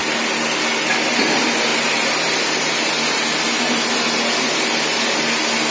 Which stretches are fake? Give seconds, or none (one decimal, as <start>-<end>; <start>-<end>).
none